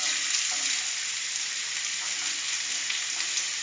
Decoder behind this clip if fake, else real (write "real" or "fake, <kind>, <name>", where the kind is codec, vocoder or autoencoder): real